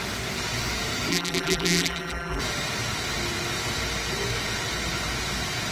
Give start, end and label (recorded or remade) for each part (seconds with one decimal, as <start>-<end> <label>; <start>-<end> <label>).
0.0-1.1 recorded; 1.1-2.4 remade; 2.4-5.7 recorded